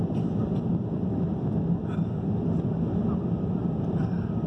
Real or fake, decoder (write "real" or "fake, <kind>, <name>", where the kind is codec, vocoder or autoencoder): real